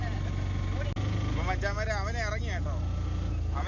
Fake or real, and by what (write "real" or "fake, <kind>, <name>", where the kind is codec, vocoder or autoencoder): real